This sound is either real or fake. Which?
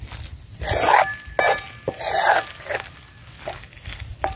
real